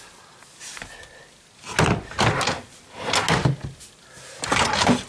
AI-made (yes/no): no